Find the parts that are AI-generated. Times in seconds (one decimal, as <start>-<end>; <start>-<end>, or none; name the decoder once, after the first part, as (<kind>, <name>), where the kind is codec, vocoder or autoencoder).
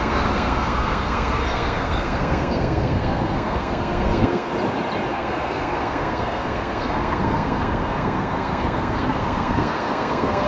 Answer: 0.0-4.5 (codec, SNAC); 5.1-10.5